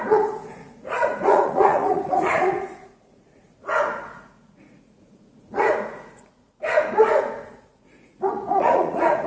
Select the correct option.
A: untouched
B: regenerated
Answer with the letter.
B